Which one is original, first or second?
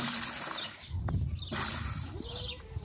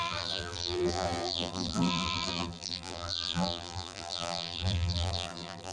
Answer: first